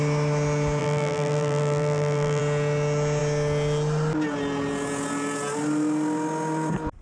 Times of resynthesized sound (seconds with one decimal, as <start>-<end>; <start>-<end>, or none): 0.8-2.4